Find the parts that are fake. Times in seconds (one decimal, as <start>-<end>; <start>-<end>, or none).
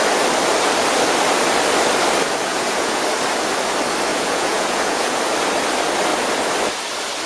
2.5-3.0; 4.1-5.2